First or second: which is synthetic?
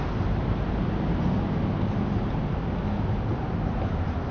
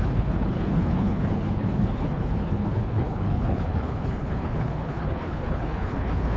second